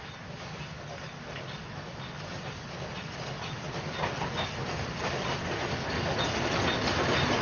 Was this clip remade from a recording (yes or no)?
no